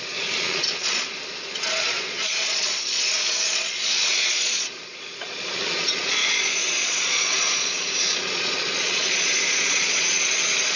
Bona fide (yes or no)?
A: no